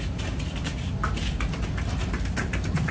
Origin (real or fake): real